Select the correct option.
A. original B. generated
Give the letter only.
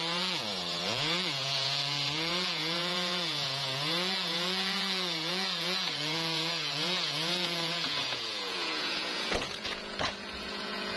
B